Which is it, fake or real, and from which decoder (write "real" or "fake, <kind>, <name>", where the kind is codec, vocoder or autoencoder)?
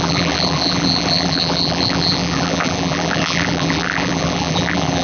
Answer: fake, vocoder, BigVGAN v2